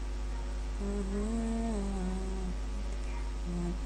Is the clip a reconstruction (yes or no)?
no